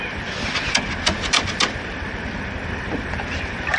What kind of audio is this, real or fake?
real